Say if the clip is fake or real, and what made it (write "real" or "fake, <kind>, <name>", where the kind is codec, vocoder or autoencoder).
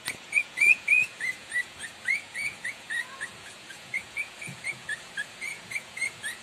fake, vocoder, Vocos